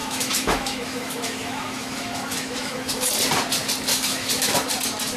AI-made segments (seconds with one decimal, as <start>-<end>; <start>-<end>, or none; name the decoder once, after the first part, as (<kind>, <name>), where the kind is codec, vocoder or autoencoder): 0.0-3.1 (autoencoder, DAC-VAE); 3.9-4.7